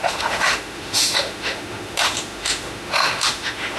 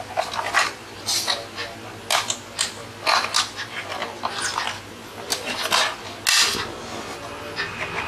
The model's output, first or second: first